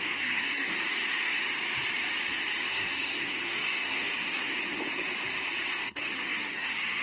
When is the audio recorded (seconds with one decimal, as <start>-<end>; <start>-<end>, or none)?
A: 0.7-2.7; 4.6-5.7